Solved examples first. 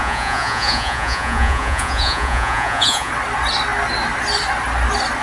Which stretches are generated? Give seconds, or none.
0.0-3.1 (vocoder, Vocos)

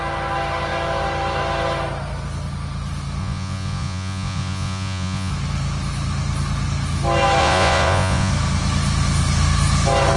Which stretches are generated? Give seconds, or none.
3.2-5.3 (vocoder, Vocos); 7.4-8.3

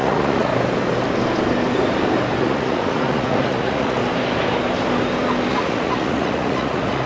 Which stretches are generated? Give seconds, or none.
0.0-0.5 (vocoder, Vocos); 2.4-4.0; 5.5-7.1

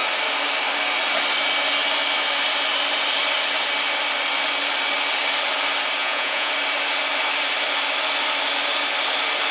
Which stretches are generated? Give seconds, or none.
6.0-6.5 (vocoder, Vocos)

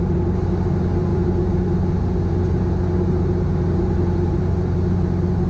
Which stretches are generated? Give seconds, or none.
none

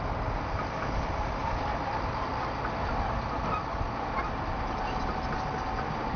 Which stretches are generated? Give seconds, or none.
none

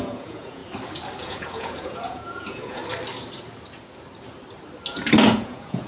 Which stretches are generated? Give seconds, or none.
0.0-0.6 (vocoder, Vocos); 1.2-2.8; 5.3-5.9

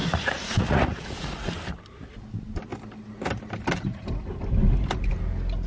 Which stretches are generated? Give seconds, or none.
0.0-1.5 (vocoder, Vocos)